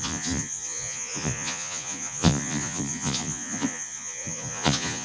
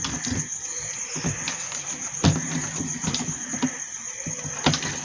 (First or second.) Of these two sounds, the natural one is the second